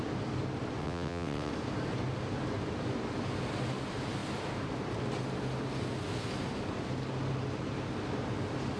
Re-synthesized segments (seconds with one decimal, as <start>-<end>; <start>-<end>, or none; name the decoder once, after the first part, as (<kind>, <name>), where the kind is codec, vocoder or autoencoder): 0.8-1.5 (vocoder, WaveNeXt)